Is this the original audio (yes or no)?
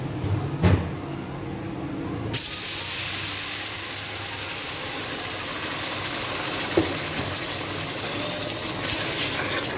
yes